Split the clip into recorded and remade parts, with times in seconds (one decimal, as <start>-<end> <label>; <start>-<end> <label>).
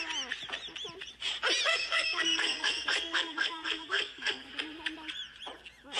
0.0-1.7 recorded; 1.7-4.5 remade; 4.5-6.0 recorded